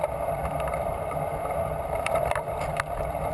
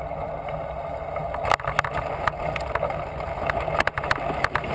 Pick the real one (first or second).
second